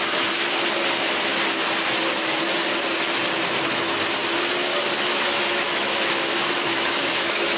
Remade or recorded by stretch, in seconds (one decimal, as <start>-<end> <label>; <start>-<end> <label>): 0.0-0.4 remade; 0.4-5.0 recorded; 5.0-7.6 remade